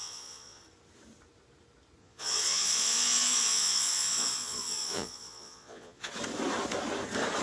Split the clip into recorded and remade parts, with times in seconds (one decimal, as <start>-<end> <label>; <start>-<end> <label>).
0.0-0.6 remade; 0.6-2.0 recorded; 2.0-6.1 remade; 6.1-7.4 recorded